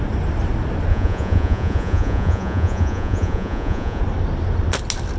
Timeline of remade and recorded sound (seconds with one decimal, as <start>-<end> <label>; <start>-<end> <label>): 0.0-0.9 recorded; 0.9-4.0 remade; 4.0-5.2 recorded